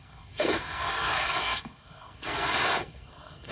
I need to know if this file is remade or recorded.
remade